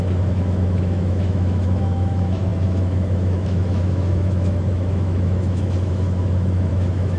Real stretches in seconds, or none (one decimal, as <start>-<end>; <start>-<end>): none